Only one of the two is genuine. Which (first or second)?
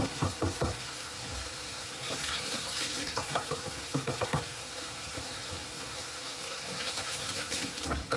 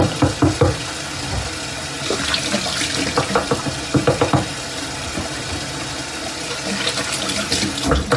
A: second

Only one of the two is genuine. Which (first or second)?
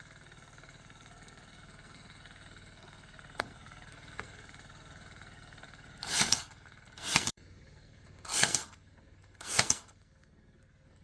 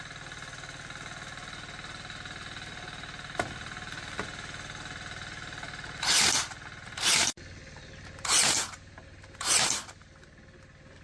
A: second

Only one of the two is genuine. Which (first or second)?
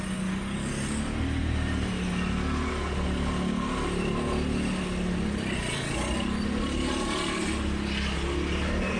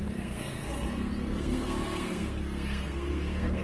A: first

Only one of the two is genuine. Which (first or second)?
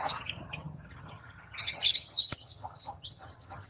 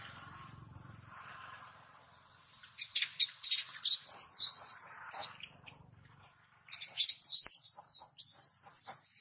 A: second